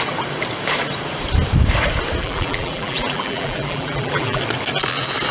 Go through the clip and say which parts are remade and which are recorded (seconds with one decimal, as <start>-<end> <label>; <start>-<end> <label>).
0.0-2.2 recorded; 2.2-4.4 remade; 4.4-5.3 recorded